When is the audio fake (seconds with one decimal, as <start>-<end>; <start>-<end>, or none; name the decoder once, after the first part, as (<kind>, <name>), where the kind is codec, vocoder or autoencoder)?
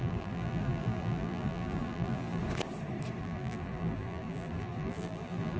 0.0-2.4 (vocoder, BigVGAN v2); 3.2-5.6